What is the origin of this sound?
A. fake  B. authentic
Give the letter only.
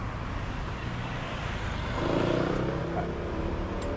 B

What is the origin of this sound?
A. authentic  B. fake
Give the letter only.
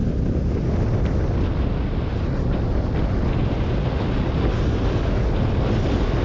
A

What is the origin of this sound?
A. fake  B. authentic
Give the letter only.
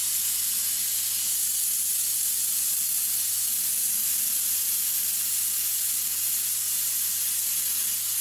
B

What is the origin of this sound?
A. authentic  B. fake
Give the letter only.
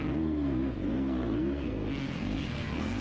B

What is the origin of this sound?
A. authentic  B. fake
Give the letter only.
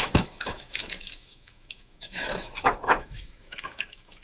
B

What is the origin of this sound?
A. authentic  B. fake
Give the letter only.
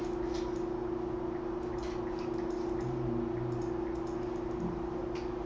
A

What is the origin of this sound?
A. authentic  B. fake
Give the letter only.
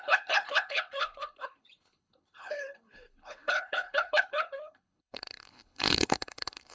B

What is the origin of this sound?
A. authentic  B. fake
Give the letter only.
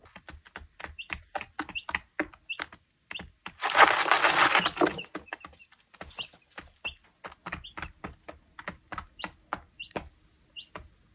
A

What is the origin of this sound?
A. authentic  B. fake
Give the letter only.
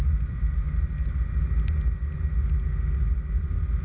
A